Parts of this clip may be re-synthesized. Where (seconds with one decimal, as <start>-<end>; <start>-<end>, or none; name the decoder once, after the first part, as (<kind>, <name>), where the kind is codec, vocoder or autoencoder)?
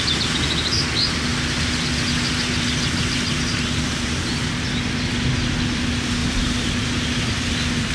none